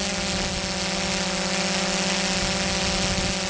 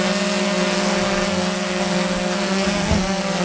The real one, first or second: first